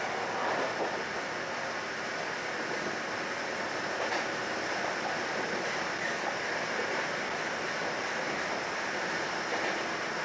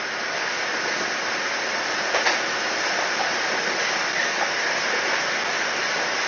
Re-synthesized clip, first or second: first